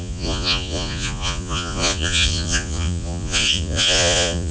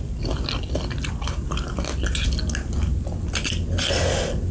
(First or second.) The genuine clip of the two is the second